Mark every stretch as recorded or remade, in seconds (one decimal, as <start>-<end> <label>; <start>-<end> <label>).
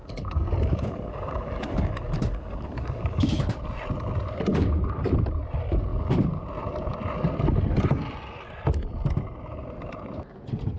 0.0-3.6 remade; 3.6-4.5 recorded; 4.5-5.1 remade; 5.1-10.8 recorded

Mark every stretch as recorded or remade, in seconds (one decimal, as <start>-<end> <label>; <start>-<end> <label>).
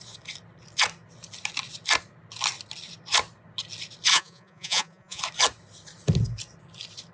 0.0-4.1 recorded; 4.1-5.2 remade; 5.2-7.1 recorded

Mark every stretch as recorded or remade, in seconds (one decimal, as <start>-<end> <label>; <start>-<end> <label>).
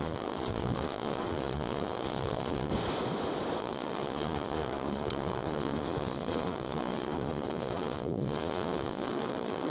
0.0-2.7 remade; 2.7-3.6 recorded; 3.6-9.7 remade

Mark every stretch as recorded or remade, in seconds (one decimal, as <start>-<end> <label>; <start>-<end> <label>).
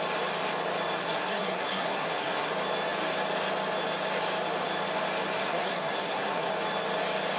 0.0-1.0 recorded; 1.0-2.5 remade; 2.5-5.4 recorded; 5.4-6.5 remade; 6.5-7.4 recorded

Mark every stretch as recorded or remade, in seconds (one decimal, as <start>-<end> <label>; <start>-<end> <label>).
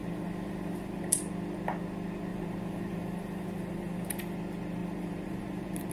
0.0-1.2 remade; 1.2-2.3 recorded; 2.3-4.2 remade; 4.2-4.8 recorded; 4.8-5.9 remade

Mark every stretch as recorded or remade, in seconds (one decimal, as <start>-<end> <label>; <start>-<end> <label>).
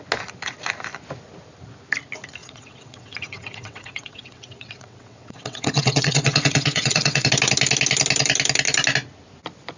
0.0-2.4 recorded; 2.4-7.3 remade; 7.3-9.8 recorded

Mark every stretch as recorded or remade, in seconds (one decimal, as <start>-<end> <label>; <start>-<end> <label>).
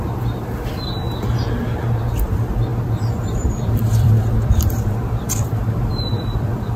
0.0-2.7 recorded; 2.7-6.8 remade